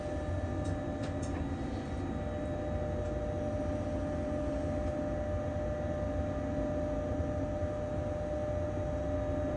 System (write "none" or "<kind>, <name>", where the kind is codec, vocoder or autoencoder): none